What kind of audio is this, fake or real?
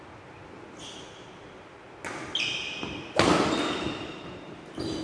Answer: real